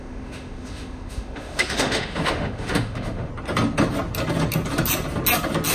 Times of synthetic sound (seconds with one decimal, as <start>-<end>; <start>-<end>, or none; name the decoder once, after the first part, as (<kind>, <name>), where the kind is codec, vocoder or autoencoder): 0.0-3.3 (autoencoder, DAC-VAE)